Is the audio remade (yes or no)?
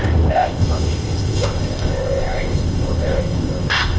yes